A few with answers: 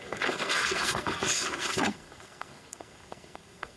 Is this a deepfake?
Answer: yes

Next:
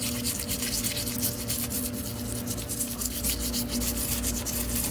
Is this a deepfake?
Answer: no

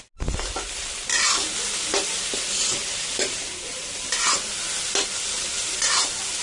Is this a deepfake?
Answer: no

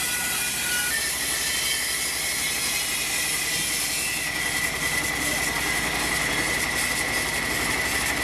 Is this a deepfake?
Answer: no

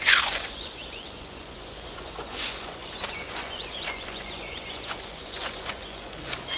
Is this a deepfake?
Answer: yes